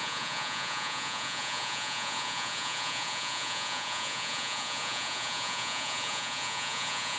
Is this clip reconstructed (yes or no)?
yes